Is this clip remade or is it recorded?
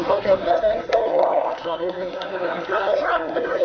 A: remade